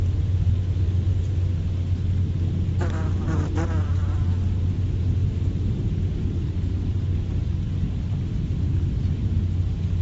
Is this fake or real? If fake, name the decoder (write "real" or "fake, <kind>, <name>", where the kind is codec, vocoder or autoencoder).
real